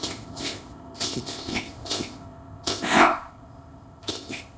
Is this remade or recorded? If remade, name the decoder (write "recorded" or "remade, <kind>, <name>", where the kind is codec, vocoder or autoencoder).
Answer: remade, codec, ZipCodec